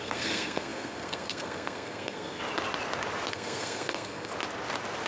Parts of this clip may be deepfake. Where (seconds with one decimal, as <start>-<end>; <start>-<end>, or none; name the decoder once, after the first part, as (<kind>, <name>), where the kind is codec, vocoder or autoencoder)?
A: 0.0-2.4 (codec, SNAC); 3.3-4.3

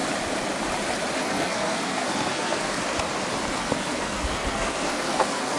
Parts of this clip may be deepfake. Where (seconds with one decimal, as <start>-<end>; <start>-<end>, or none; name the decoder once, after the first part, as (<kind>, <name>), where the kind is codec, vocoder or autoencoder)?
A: 1.2-2.8 (codec, SNAC); 3.6-5.6

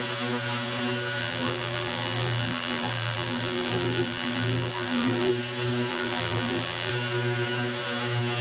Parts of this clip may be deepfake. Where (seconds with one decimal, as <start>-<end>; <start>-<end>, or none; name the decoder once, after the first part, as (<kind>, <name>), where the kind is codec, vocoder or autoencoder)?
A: 1.2-5.3 (vocoder, BigVGAN v2); 5.9-6.9

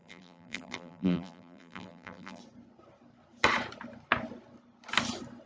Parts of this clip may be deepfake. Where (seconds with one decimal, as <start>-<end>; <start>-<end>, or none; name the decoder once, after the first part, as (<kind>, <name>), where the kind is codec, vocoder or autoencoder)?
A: 0.0-2.4 (vocoder, BigVGAN v2)